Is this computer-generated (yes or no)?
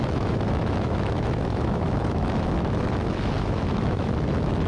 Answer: yes